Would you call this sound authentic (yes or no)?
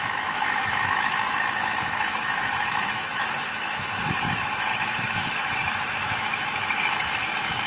no